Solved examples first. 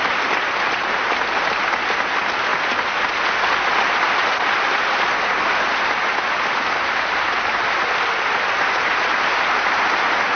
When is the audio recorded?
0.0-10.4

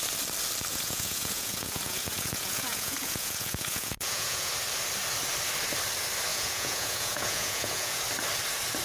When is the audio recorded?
0.0-0.7; 4.5-6.3; 8.0-8.8

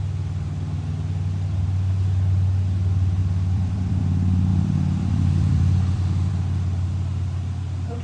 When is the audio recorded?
0.0-3.2; 4.0-4.5; 6.3-8.0

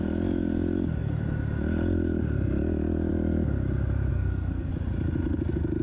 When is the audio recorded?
0.0-4.1; 4.7-5.8

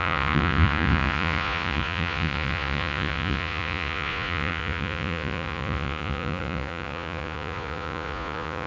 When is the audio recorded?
none

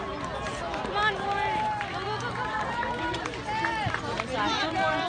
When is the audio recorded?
0.0-5.1